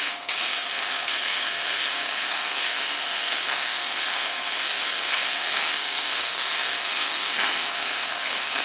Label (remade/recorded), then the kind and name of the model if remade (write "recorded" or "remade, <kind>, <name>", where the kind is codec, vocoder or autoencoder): remade, codec, SNAC